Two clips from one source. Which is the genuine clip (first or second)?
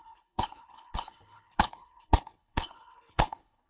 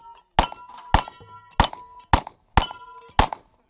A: second